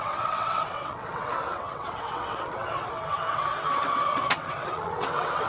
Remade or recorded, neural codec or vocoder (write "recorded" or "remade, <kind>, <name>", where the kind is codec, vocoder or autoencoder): remade, vocoder, WaveNeXt